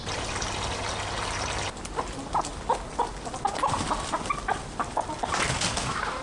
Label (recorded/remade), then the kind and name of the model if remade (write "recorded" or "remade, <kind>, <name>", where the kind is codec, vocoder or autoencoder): recorded